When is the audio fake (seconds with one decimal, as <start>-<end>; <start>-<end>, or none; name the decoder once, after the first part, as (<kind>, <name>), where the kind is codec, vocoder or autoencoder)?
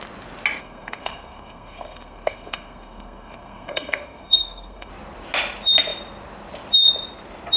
0.6-4.9 (codec, SNAC)